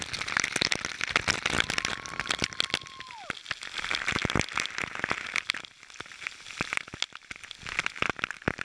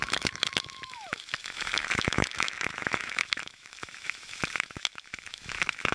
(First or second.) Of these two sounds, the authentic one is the first